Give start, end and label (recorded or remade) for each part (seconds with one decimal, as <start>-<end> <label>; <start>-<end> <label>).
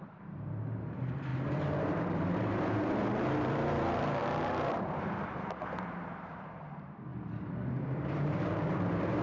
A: 0.0-1.3 remade; 1.3-1.8 recorded; 1.8-7.1 remade; 7.1-7.7 recorded; 7.7-9.2 remade